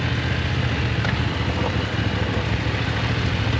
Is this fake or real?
real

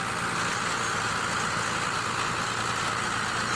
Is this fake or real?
real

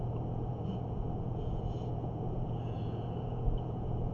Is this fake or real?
fake